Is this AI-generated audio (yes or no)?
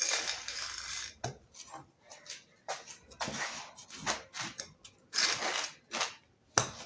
no